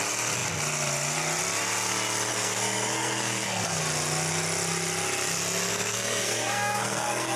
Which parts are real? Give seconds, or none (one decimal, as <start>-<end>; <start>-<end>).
0.0-2.3; 3.8-5.7